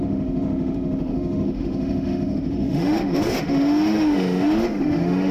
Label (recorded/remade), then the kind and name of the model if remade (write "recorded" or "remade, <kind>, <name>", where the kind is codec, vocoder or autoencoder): remade, autoencoder, DAC-VAE